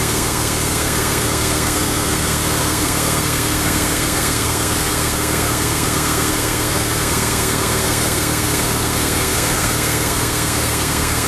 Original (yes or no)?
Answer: no